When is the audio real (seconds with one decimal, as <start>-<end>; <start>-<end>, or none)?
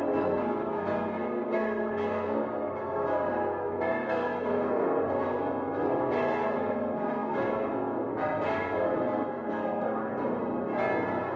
10.4-11.4